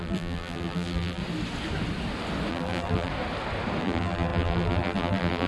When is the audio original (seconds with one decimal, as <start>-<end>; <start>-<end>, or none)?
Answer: 1.2-2.5; 3.1-3.8